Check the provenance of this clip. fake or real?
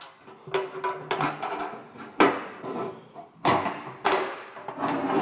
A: real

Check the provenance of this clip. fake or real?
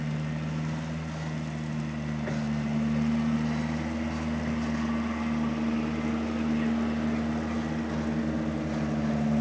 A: real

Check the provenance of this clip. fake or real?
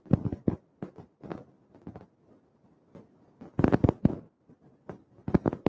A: real